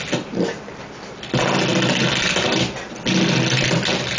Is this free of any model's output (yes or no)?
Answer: yes